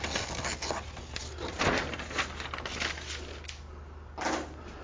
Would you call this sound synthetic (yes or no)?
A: no